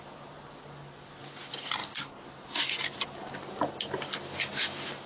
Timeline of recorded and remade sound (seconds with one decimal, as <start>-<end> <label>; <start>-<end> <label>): 0.0-5.1 recorded